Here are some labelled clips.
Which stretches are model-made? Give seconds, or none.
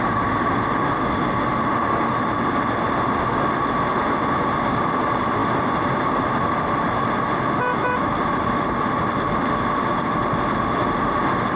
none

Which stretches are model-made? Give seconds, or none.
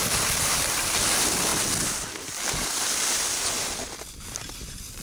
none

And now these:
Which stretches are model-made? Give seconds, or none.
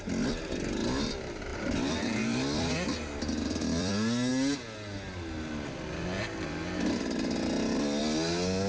1.5-3.9 (vocoder, BigVGAN v2)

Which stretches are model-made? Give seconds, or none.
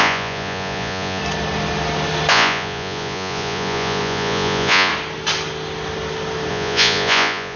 0.0-1.2 (vocoder, Vocos); 2.3-4.9; 6.5-7.6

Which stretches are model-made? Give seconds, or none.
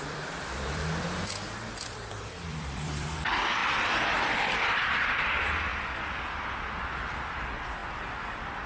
0.0-5.7 (vocoder, BigVGAN v2); 6.8-8.7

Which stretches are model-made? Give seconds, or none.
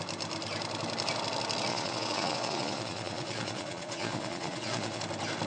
1.7-5.0 (vocoder, Vocos)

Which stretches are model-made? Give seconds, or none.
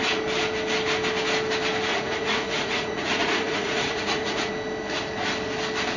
1.9-4.5 (vocoder, Vocos)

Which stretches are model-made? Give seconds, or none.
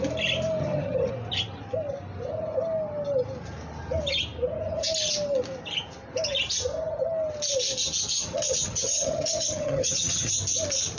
0.6-1.1 (vocoder, HiFi-GAN); 8.1-10.3